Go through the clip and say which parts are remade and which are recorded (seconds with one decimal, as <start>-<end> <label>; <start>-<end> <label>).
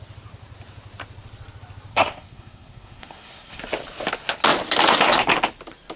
0.0-1.9 recorded; 1.9-3.6 remade; 3.6-6.0 recorded